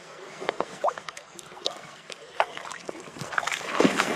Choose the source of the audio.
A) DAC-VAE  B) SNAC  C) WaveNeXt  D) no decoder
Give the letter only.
B